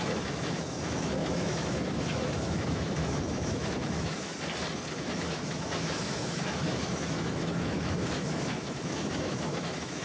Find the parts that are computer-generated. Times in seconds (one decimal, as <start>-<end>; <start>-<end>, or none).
0.0-4.3; 5.0-10.0